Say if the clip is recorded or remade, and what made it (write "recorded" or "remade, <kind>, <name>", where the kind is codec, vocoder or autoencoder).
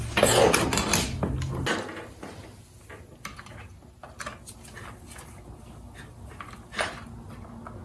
recorded